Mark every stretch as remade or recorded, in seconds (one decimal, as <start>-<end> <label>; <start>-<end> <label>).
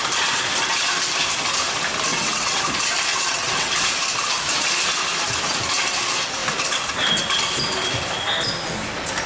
0.0-2.1 recorded; 2.1-2.6 remade; 2.6-3.1 recorded; 3.1-3.7 remade; 3.7-9.3 recorded